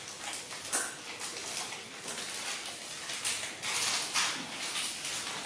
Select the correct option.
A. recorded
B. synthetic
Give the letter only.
A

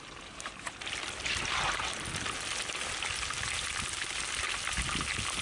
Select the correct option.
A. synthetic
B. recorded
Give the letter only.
B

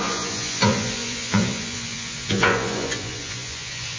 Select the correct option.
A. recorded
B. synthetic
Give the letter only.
B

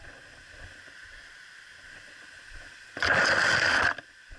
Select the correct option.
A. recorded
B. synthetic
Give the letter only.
A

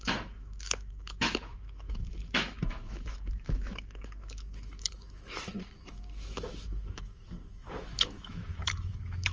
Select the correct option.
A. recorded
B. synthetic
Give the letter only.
B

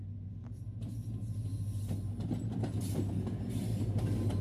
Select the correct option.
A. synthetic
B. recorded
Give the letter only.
B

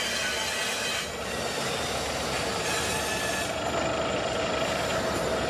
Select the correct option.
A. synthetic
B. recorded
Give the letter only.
B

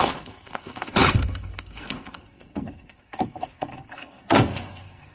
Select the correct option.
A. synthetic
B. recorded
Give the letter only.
A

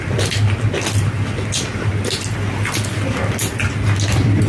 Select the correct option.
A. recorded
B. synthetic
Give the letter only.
A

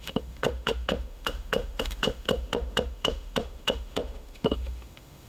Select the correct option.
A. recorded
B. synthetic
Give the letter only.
B